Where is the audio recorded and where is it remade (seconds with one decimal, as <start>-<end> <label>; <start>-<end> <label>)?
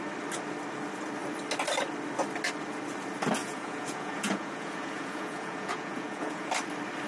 0.0-3.4 recorded; 3.4-6.5 remade; 6.5-7.1 recorded